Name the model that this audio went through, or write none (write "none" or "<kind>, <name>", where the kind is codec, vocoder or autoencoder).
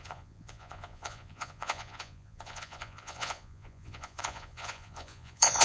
vocoder, Vocos